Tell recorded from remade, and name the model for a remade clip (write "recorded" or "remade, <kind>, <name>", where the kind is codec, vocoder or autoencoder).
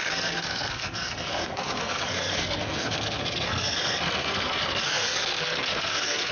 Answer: remade, codec, SNAC